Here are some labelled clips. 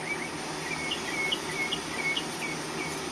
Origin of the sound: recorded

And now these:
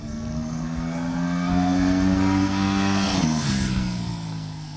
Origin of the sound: remade